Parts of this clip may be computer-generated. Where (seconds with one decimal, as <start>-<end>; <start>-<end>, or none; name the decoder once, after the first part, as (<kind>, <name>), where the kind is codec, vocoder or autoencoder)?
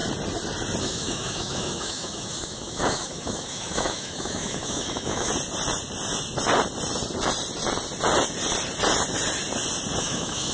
0.8-5.3 (autoencoder, DAC-VAE); 10.0-10.5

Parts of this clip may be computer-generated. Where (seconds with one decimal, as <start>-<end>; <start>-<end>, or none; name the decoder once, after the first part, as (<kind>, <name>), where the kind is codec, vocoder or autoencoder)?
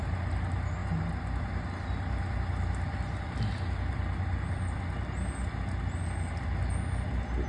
none